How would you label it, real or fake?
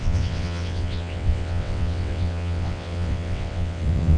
fake